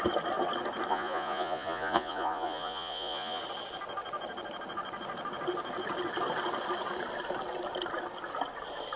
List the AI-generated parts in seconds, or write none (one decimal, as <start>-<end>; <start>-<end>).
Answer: 0.9-3.4